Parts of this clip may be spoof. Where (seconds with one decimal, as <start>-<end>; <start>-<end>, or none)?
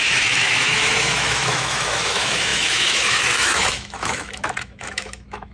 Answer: 0.0-5.5